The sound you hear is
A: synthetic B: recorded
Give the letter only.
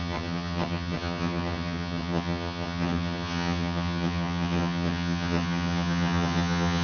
A